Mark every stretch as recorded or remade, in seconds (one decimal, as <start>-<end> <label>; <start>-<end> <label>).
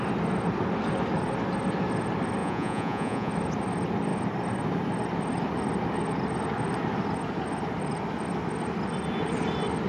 0.0-2.4 recorded; 2.4-3.3 remade; 3.3-9.9 recorded